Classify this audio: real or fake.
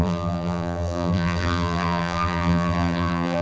fake